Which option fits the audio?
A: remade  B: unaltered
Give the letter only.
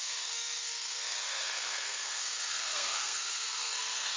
A